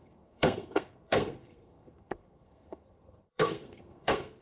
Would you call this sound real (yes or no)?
no